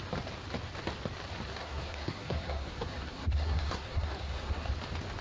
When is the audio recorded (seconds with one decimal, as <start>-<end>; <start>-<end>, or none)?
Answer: 0.0-1.6; 4.7-5.2